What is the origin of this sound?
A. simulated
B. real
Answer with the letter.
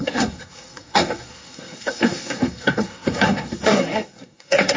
A